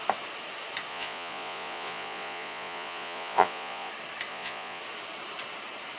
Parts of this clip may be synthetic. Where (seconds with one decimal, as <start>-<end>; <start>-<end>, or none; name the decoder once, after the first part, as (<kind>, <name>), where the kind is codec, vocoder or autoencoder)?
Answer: 0.9-3.9 (vocoder, Vocos); 4.3-4.8